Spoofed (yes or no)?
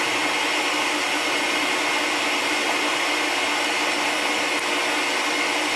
no